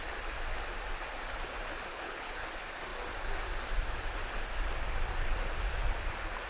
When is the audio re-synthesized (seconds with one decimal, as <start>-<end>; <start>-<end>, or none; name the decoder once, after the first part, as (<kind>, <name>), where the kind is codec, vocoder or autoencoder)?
1.9-2.5 (codec, HILCodec)